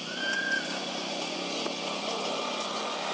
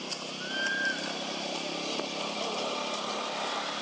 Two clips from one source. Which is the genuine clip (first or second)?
second